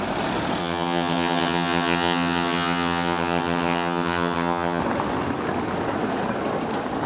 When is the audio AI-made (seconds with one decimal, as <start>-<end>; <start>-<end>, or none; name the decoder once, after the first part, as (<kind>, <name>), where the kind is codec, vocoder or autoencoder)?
0.6-4.8 (vocoder, HiFi-GAN)